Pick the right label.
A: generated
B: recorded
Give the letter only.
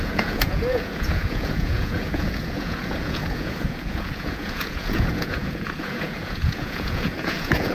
A